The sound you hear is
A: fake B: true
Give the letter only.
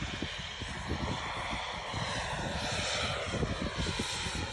B